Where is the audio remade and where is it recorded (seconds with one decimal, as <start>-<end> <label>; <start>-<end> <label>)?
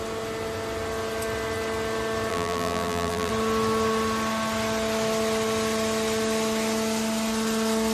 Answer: 0.0-2.3 recorded; 2.3-3.3 remade; 3.3-7.9 recorded